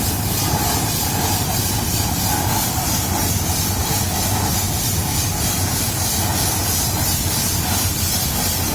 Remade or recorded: recorded